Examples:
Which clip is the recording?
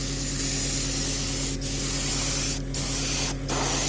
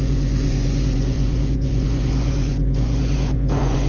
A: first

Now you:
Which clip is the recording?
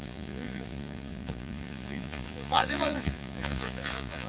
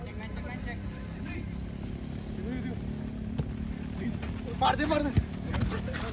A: second